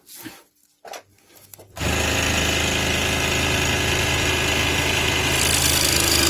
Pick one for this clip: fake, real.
real